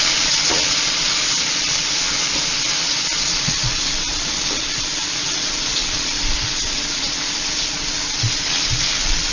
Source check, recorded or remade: remade